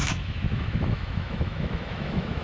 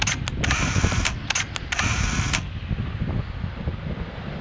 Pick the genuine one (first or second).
second